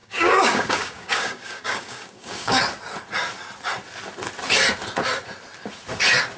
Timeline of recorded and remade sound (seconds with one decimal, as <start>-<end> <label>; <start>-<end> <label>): 0.0-2.6 remade; 2.6-6.4 recorded